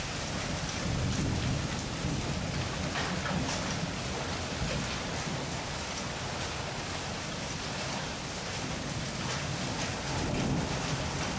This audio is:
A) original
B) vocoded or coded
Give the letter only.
A